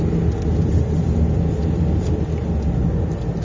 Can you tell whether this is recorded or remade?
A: recorded